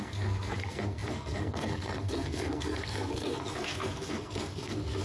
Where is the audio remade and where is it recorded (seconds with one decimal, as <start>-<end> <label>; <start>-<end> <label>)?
0.0-5.0 remade